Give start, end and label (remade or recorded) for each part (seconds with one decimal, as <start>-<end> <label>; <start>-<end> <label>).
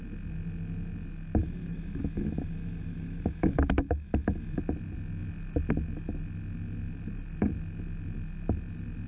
0.0-1.4 recorded; 1.4-4.6 remade; 4.6-9.1 recorded